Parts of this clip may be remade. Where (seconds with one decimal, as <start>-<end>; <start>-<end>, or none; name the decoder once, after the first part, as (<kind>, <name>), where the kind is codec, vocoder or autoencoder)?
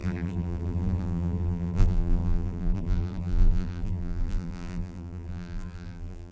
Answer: 0.0-6.3 (vocoder, BigVGAN v2)